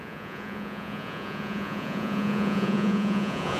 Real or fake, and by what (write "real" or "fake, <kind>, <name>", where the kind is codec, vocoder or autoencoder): fake, vocoder, Vocos